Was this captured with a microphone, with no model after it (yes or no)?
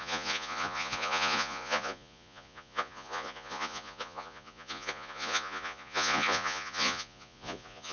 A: no